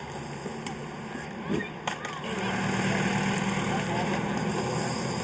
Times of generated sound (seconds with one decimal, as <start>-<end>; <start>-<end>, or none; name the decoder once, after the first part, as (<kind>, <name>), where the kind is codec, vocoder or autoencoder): none